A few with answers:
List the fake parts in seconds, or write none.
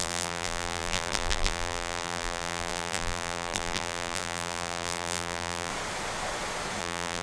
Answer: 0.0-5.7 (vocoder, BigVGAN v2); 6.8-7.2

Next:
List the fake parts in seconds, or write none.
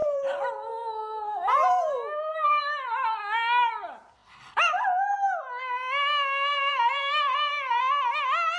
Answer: 0.0-0.7 (vocoder, BigVGAN v2); 2.3-3.2; 4.2-5.6; 6.5-7.8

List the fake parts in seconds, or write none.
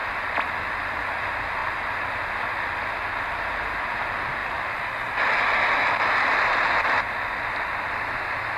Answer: none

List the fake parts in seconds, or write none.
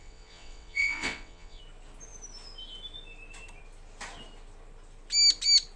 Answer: 0.0-1.6 (vocoder, WaveNeXt)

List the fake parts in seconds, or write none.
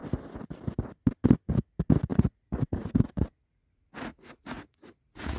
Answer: 2.1-5.4 (vocoder, Vocos)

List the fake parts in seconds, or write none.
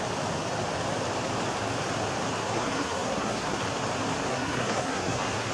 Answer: 2.4-3.6 (codec, SNAC); 4.3-5.5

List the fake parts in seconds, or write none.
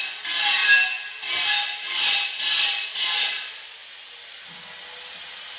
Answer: none